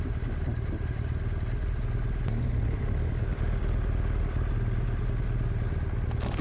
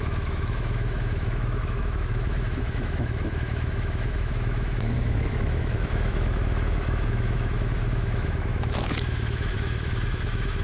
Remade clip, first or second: second